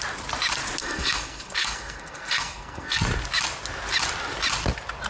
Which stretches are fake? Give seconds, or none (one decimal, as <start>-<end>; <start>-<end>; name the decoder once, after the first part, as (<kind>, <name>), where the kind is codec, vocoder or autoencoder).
0.8-3.0 (codec, SNAC)